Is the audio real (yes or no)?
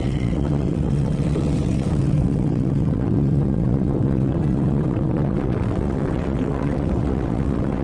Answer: no